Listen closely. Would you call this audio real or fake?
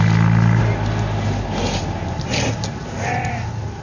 real